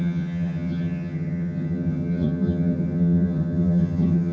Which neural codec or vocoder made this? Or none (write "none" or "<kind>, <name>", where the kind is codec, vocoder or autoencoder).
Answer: vocoder, HiFi-GAN